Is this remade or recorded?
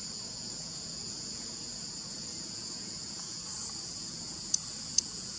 remade